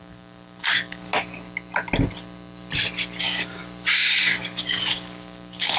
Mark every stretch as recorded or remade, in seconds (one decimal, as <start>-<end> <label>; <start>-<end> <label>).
0.0-1.1 remade; 1.1-3.2 recorded; 3.2-3.6 remade; 3.6-4.2 recorded; 4.2-5.8 remade